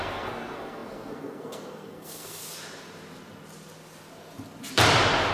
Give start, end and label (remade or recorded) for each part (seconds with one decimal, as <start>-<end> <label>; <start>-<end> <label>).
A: 0.0-2.4 remade; 2.4-5.3 recorded